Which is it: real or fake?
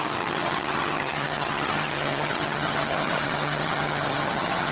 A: fake